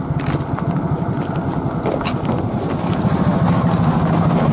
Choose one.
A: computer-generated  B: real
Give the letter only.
B